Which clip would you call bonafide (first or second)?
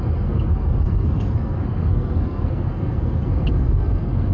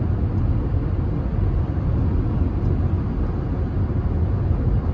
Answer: second